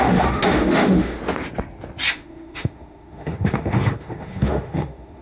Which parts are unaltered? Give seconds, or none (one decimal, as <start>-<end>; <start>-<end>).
1.2-2.1